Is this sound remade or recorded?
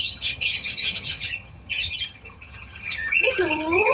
remade